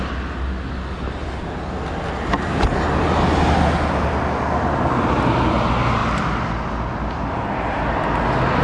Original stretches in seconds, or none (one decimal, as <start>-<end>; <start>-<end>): 0.0-8.6